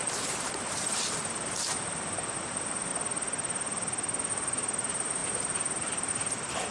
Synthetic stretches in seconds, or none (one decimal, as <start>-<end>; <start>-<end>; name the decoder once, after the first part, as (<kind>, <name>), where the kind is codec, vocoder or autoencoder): 1.6-2.9 (vocoder, BigVGAN v2); 4.3-6.7